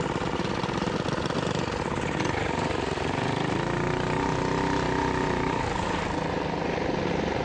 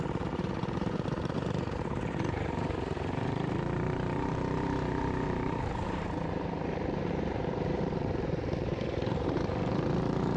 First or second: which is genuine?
first